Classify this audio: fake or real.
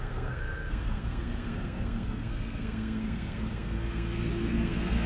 fake